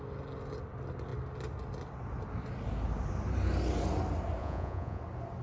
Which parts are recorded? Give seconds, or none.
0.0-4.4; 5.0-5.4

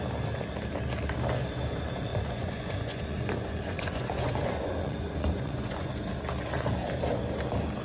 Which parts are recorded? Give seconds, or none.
0.0-2.1; 5.9-7.8